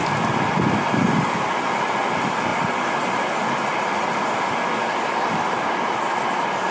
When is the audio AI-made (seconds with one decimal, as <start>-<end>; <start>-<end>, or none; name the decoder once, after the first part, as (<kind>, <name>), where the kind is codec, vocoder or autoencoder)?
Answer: none